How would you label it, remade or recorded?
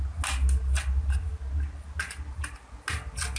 recorded